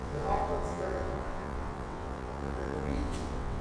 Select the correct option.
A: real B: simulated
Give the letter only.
B